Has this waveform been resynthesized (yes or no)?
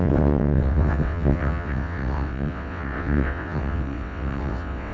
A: yes